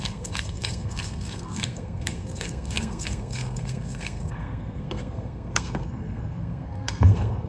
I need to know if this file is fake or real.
fake